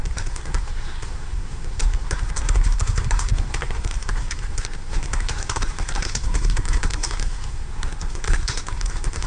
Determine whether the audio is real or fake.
fake